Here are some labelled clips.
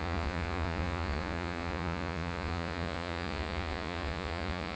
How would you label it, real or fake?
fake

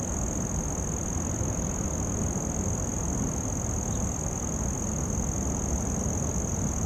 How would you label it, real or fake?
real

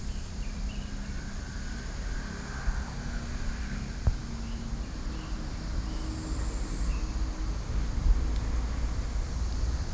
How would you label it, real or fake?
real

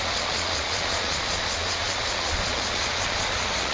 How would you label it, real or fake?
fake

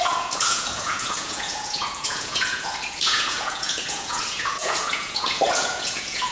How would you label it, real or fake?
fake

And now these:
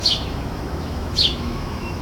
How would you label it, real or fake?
fake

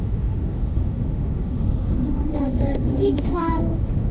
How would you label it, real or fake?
fake